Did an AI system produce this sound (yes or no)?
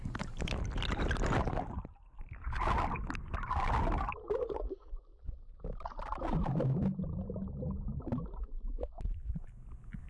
no